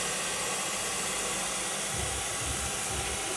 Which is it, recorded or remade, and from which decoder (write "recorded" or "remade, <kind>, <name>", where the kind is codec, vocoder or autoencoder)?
recorded